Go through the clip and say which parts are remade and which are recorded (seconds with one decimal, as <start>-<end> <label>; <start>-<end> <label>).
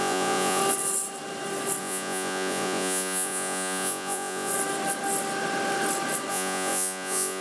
0.0-0.6 remade; 0.6-1.8 recorded; 1.8-4.5 remade; 4.5-6.3 recorded; 6.3-7.4 remade